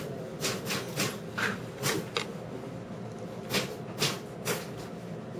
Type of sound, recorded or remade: recorded